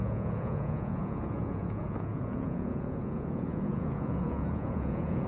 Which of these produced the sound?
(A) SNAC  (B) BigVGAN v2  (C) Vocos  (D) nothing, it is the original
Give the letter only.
C